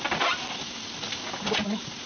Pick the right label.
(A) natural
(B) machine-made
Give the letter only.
A